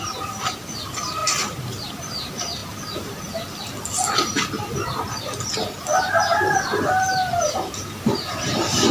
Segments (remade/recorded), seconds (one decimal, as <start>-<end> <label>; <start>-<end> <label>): 0.0-2.6 remade; 2.6-6.0 recorded; 6.0-8.9 remade